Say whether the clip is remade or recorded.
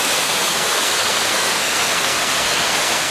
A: remade